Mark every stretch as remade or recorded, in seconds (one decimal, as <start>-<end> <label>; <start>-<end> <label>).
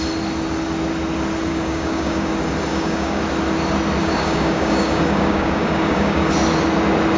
0.0-1.5 recorded; 1.5-2.3 remade; 2.3-2.7 recorded; 2.7-3.2 remade; 3.2-4.0 recorded; 4.0-6.3 remade; 6.3-7.2 recorded